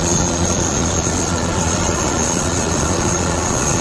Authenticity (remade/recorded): remade